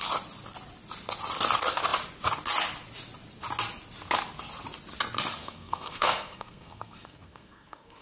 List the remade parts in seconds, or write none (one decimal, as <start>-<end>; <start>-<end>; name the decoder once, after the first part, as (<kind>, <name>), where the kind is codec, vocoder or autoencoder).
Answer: 5.4-8.0 (codec, SNAC)